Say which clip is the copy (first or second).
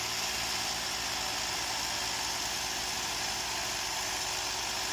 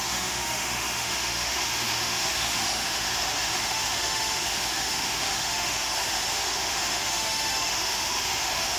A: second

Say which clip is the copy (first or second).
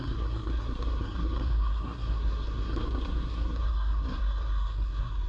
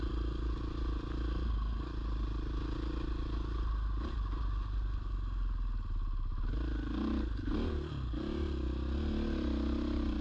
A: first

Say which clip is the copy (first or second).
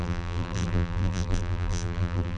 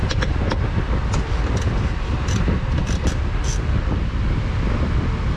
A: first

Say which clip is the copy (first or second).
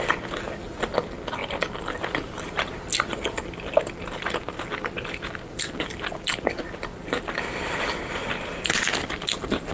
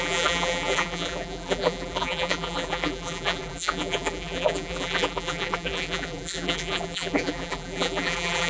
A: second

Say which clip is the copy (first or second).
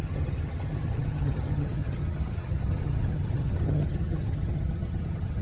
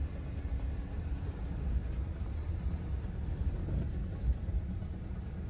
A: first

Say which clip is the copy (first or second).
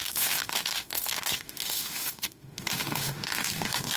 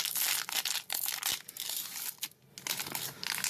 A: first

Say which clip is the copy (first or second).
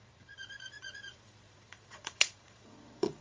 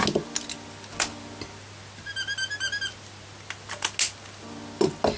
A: first